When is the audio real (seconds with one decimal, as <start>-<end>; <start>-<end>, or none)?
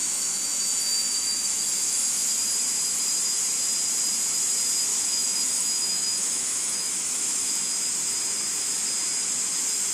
2.3-4.9; 7.7-9.9